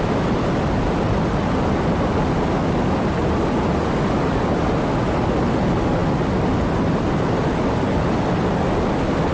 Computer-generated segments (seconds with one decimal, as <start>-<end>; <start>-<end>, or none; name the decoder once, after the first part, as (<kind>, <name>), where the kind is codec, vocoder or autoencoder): none